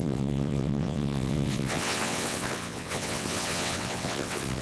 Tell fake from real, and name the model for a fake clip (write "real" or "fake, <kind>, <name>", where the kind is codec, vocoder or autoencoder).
fake, vocoder, WaveNeXt